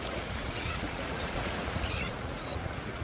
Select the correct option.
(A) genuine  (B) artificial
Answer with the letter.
B